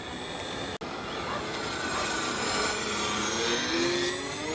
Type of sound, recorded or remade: recorded